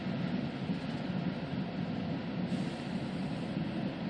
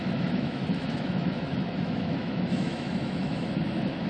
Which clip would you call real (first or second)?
first